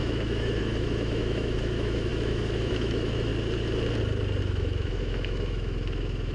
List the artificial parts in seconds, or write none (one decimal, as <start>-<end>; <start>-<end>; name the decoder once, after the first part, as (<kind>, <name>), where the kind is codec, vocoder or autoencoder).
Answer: 0.0-3.3 (autoencoder, DAC-VAE); 4.4-6.3